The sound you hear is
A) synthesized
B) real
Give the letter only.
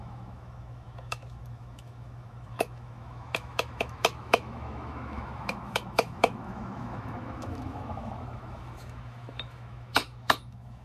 A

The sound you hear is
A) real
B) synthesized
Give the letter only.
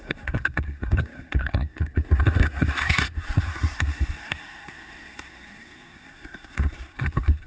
B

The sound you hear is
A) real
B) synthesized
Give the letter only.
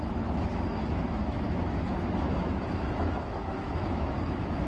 B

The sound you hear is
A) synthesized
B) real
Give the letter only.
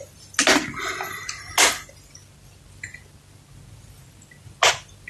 B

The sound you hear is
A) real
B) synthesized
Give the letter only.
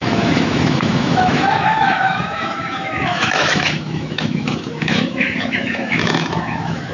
B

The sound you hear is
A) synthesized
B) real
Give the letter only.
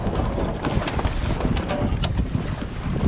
B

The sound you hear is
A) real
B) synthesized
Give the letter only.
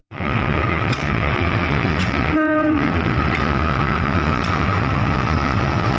B